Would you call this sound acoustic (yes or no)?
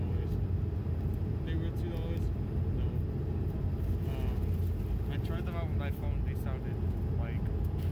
yes